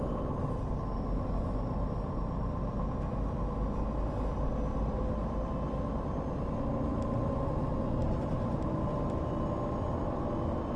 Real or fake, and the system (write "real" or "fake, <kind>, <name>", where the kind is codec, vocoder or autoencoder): real